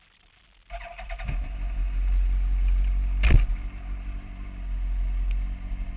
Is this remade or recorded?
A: recorded